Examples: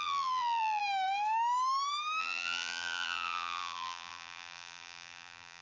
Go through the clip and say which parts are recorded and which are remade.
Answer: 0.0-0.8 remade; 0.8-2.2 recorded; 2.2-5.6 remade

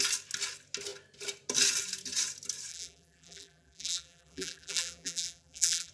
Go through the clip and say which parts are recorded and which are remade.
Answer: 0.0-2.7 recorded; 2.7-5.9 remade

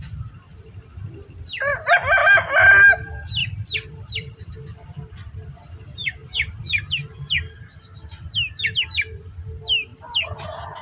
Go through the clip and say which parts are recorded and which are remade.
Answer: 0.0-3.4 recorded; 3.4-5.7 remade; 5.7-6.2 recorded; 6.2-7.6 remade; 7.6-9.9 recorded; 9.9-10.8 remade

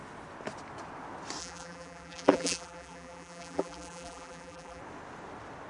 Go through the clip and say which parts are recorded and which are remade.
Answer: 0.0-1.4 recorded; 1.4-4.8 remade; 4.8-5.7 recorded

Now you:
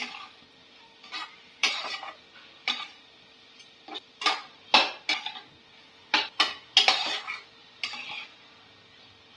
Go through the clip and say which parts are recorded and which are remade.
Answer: 0.0-1.4 recorded; 1.4-2.1 remade; 2.1-7.6 recorded; 7.6-8.6 remade; 8.6-9.4 recorded

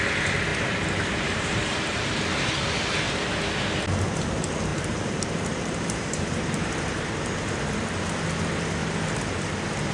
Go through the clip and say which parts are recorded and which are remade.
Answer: 0.0-0.5 recorded; 0.5-2.2 remade; 2.2-4.7 recorded; 4.7-6.7 remade; 6.7-8.8 recorded; 8.8-9.4 remade; 9.4-9.9 recorded

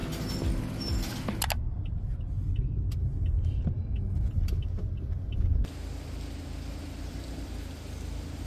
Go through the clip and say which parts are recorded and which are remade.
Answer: 0.0-8.5 recorded